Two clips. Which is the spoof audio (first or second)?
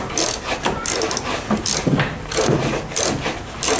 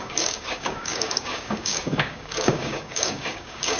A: second